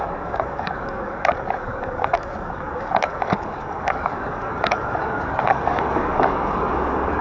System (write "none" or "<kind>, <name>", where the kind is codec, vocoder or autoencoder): codec, DAC